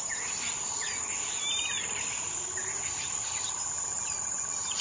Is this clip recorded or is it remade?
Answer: recorded